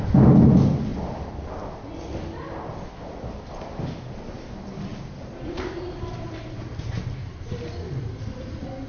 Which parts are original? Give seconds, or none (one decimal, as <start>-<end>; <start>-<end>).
0.0-8.9